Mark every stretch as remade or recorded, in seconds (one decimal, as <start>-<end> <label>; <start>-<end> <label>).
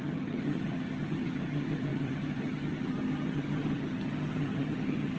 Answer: 0.0-5.2 remade